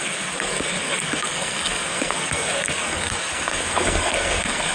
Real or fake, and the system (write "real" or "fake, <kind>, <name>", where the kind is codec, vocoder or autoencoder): fake, codec, SNAC